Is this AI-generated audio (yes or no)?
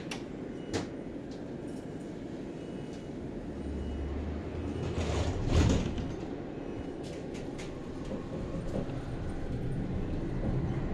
no